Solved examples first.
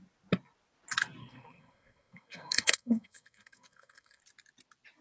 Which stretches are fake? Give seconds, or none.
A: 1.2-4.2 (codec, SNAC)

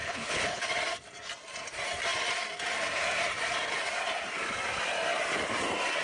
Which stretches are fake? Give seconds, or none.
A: 0.0-0.6 (codec, HILCodec)

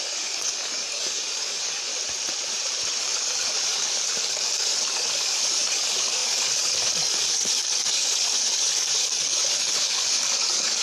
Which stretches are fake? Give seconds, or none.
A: 0.0-1.9 (codec, DAC); 3.0-10.8